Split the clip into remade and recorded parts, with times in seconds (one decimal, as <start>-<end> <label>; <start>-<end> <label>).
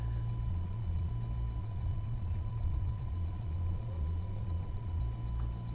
0.0-0.5 recorded; 0.5-1.1 remade; 1.1-1.6 recorded; 1.6-5.0 remade; 5.0-5.7 recorded